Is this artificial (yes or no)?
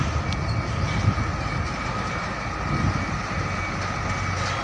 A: no